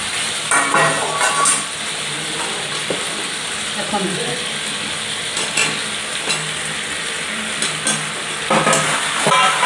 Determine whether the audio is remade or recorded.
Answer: recorded